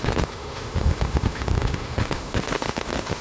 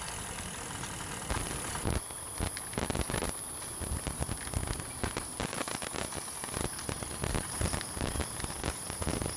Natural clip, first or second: second